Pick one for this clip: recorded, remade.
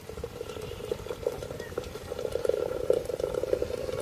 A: recorded